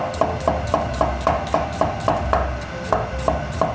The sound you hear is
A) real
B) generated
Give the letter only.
A